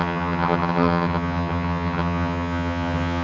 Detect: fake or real fake